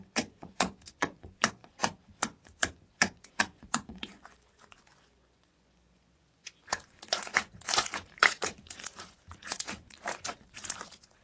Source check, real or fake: fake